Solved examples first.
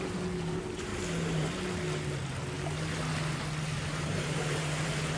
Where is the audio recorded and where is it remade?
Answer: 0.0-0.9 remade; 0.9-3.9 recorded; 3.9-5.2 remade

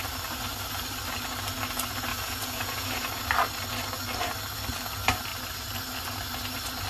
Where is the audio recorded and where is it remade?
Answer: 0.0-2.1 recorded; 2.1-3.1 remade; 3.1-6.9 recorded

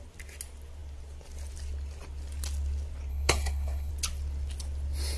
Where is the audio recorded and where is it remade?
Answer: 0.0-3.1 recorded; 3.1-3.9 remade; 3.9-5.2 recorded